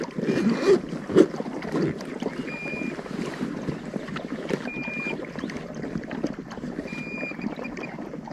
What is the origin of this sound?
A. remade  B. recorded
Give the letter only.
A